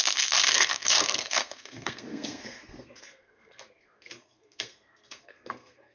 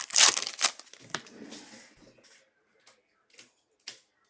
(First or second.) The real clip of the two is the second